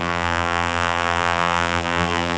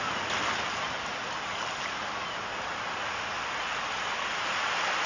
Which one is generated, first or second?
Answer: first